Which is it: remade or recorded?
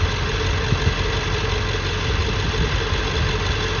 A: recorded